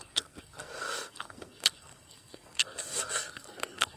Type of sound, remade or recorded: remade